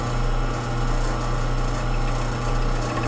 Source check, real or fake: real